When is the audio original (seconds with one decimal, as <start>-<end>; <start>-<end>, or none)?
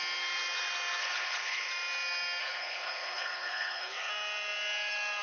0.0-1.0; 1.7-2.4; 4.1-5.2